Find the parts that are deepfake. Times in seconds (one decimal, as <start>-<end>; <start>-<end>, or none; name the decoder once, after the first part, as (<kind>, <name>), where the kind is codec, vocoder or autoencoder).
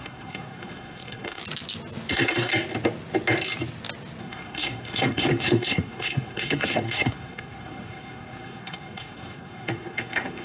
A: 0.0-1.4 (codec, SNAC); 2.1-2.5; 4.2-10.4